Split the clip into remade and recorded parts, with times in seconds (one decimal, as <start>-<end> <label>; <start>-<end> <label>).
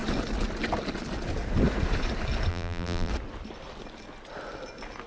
0.0-2.5 recorded; 2.5-3.1 remade; 3.1-5.1 recorded